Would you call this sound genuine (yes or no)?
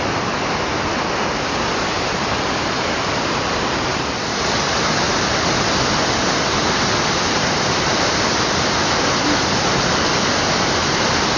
no